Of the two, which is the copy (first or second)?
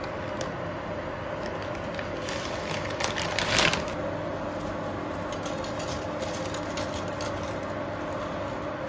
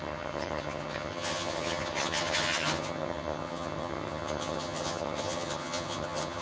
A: second